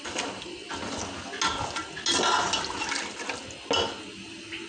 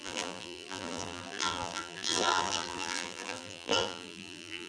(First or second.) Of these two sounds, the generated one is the second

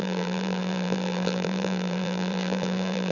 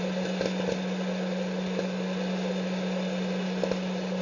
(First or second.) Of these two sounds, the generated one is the first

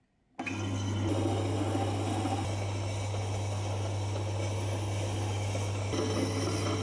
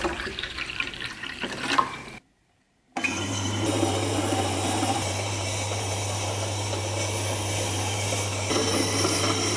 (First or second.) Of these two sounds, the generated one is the second